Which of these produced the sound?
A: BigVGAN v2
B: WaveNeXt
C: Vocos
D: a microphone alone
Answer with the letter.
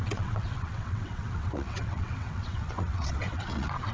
B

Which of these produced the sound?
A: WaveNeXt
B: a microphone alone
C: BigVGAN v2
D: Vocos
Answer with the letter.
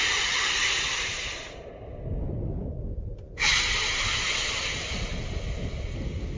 B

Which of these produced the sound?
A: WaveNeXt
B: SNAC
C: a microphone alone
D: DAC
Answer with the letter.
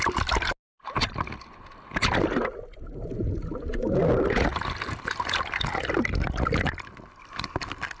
C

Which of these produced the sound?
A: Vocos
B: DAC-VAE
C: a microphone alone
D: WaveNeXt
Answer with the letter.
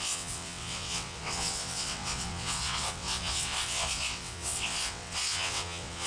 D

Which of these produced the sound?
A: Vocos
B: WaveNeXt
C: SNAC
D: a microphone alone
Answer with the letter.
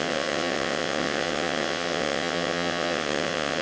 B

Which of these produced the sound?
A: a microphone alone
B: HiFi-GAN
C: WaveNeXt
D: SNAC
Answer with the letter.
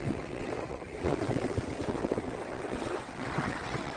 C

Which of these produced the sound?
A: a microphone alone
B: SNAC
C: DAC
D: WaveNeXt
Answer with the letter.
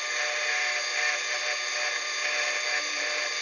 A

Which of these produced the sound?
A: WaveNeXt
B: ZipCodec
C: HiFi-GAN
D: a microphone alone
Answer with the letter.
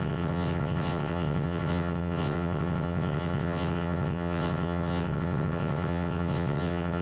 A